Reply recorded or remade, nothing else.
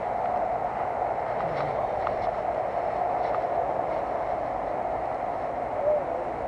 recorded